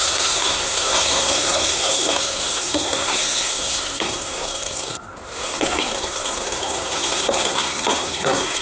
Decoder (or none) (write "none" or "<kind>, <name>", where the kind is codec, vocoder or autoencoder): codec, SNAC